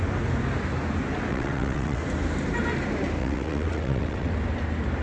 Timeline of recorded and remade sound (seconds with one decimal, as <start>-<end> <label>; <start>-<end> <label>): 0.0-1.3 recorded; 1.3-2.0 remade; 2.0-3.2 recorded; 3.2-4.3 remade; 4.3-5.0 recorded